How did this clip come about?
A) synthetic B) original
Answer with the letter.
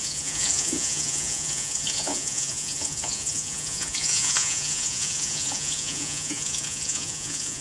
A